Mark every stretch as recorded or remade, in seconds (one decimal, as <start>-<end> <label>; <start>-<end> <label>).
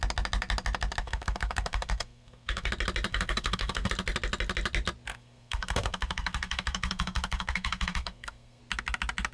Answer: 0.0-1.0 recorded; 1.0-2.7 remade; 2.7-3.1 recorded; 3.1-3.9 remade; 3.9-5.1 recorded; 5.1-8.6 remade; 8.6-9.3 recorded